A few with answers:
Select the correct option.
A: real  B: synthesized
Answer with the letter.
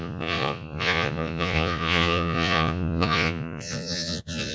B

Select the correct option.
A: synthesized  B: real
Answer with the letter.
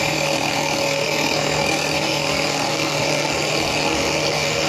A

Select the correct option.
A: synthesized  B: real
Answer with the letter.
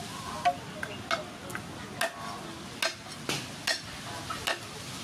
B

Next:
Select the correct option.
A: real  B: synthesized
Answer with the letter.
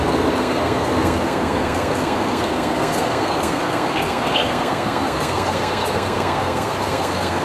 B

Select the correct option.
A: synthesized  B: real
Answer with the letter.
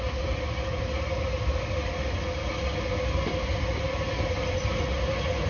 B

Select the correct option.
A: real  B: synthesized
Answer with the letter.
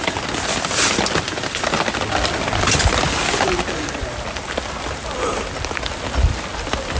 A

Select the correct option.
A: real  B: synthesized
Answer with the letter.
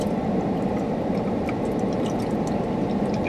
A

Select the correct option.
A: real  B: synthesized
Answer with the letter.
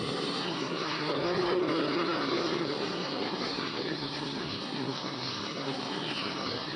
B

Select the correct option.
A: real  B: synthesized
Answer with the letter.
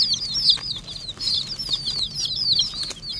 A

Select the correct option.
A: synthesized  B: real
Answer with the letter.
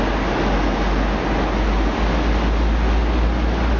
B